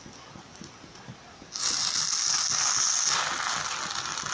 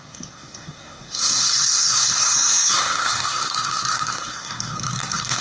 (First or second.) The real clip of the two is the first